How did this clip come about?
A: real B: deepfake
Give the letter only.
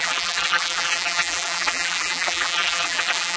B